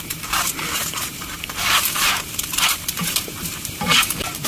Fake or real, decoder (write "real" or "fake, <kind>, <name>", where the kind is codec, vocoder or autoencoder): fake, vocoder, BigVGAN v2